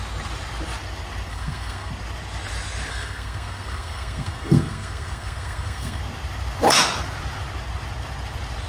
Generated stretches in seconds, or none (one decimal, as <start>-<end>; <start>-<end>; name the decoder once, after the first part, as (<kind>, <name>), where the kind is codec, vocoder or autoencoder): 1.3-1.9 (codec, SNAC); 2.9-6.0